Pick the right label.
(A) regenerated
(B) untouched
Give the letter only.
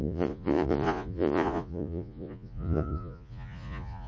A